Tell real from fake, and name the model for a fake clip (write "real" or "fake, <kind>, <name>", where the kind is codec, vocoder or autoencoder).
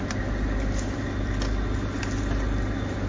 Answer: real